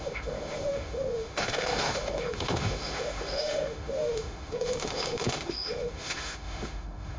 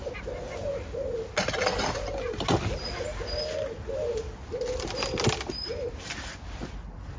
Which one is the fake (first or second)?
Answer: first